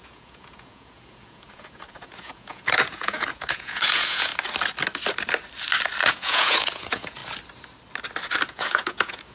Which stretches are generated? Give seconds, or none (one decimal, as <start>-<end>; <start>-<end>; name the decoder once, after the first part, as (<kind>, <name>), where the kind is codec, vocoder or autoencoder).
0.0-4.3 (vocoder, Vocos); 6.1-7.2; 8.5-9.3